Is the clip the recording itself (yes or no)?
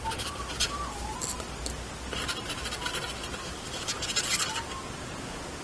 yes